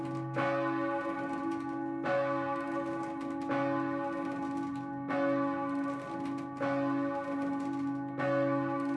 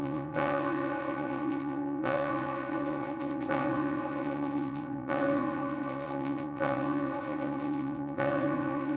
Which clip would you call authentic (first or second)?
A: first